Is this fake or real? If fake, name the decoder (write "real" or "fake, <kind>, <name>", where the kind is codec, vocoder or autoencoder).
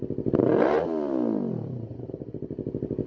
real